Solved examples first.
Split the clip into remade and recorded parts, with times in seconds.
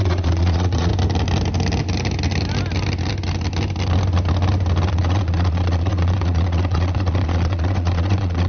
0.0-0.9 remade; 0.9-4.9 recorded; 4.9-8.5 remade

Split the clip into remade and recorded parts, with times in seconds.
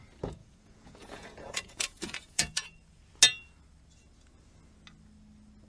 0.0-0.4 recorded; 0.4-3.0 remade; 3.0-5.7 recorded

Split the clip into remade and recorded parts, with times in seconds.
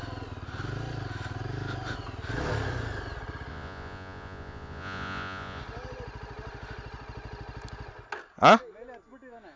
0.0-3.5 recorded; 3.5-5.6 remade; 5.6-9.6 recorded